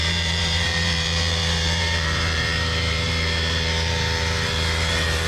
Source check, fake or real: fake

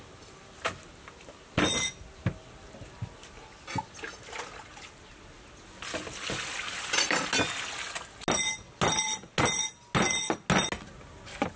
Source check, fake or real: real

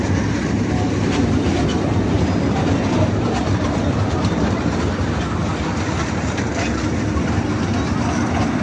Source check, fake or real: fake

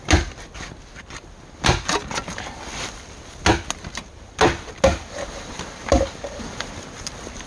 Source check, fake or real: real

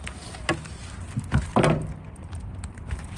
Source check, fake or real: real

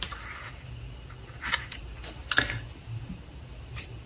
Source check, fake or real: real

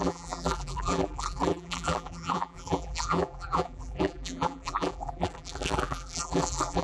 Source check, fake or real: fake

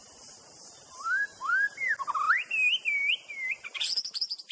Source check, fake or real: real